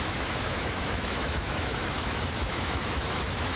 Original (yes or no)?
no